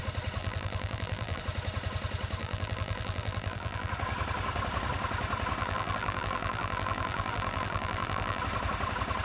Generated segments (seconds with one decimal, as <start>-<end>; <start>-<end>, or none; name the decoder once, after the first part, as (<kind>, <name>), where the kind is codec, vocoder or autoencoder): 0.4-1.4 (vocoder, BigVGAN v2); 2.4-3.9; 5.6-8.4